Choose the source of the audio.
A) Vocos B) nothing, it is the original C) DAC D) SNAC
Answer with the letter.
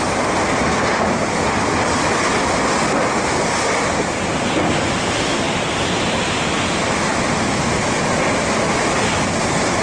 B